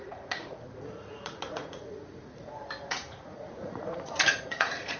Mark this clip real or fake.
fake